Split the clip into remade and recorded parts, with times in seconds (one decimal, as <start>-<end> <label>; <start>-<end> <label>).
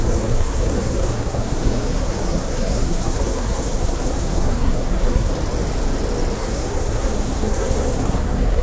0.0-5.3 remade; 5.3-6.4 recorded; 6.4-8.6 remade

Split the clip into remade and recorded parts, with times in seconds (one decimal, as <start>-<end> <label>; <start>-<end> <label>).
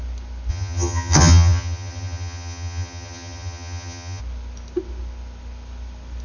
0.0-0.5 recorded; 0.5-4.2 remade; 4.2-6.2 recorded